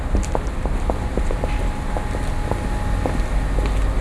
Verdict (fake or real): real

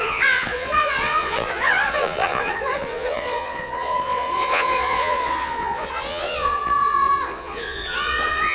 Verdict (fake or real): fake